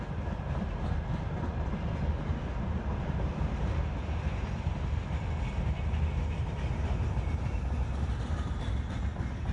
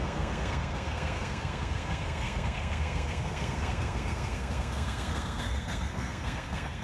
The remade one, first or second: second